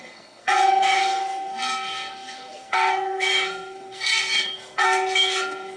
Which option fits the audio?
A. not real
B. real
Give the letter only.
A